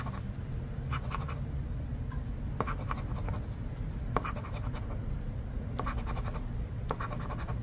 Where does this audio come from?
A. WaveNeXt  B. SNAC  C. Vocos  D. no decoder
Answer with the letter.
D